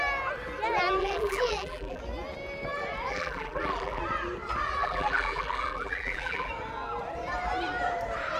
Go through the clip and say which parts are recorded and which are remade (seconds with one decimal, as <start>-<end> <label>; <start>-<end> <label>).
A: 0.0-1.0 recorded; 1.0-2.0 remade; 2.0-3.1 recorded; 3.1-4.0 remade; 4.0-4.8 recorded; 4.8-6.5 remade; 6.5-8.4 recorded